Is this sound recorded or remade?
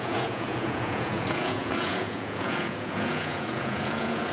remade